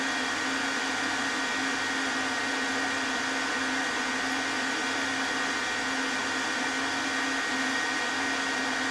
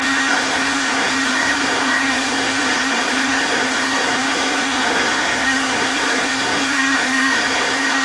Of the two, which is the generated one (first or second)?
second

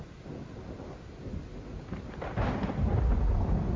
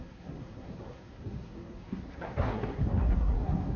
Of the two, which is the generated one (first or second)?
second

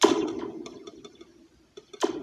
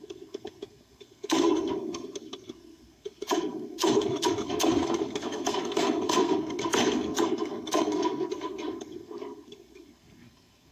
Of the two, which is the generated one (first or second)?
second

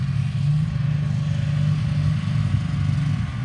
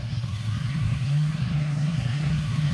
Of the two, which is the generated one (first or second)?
second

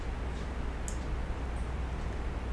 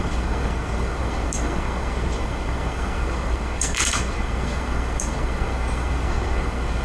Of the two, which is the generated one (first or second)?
second